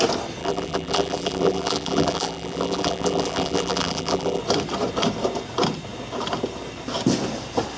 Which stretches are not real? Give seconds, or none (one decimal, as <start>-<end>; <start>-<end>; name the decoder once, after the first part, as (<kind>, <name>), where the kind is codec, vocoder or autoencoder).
0.4-4.4 (vocoder, BigVGAN v2)